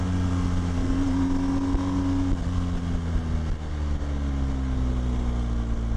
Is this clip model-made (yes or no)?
no